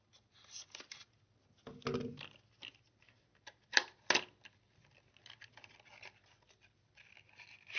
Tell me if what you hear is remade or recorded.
recorded